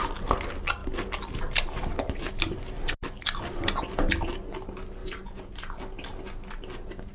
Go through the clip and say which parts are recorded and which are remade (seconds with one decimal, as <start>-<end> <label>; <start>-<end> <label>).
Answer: 0.0-5.0 recorded; 5.0-5.5 remade; 5.5-7.1 recorded